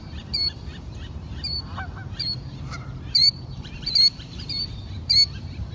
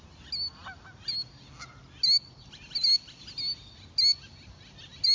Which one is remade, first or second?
first